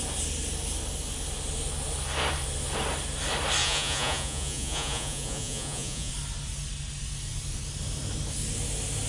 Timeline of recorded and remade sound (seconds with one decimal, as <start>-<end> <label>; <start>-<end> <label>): 0.0-3.6 recorded; 3.6-6.1 remade; 6.1-9.1 recorded